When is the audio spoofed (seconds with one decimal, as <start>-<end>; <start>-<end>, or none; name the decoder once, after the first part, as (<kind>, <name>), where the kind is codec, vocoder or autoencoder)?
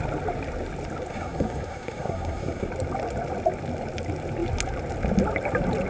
1.1-2.7 (codec, SNAC)